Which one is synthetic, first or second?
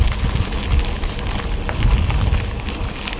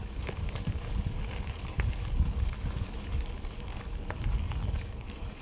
second